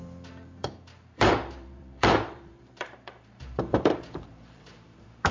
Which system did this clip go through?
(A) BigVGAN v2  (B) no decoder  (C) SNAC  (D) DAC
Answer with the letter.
A